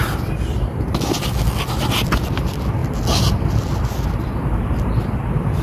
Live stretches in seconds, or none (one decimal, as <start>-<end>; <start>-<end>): 0.0-5.6